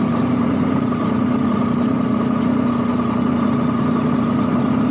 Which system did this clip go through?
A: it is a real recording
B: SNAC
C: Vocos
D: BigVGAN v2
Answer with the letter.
A